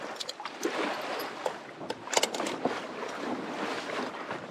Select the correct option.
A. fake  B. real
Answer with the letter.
B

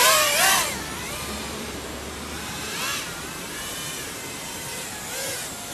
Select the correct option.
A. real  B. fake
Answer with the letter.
B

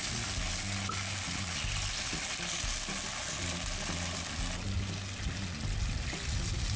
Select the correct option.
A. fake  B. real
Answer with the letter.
B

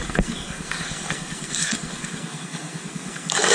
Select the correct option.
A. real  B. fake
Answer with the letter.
B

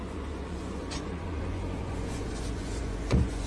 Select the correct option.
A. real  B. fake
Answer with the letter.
B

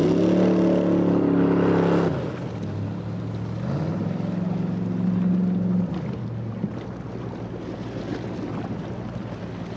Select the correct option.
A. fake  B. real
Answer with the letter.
B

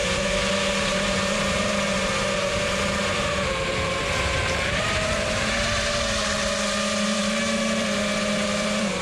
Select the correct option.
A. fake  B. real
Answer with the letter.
A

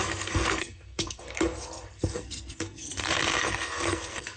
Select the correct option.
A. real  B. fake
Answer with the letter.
B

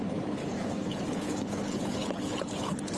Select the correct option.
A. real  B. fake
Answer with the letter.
B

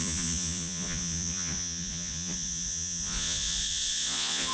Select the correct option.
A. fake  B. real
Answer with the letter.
A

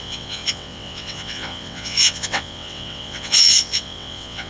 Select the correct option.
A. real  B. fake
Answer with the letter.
B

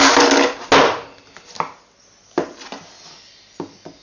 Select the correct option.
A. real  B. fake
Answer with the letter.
A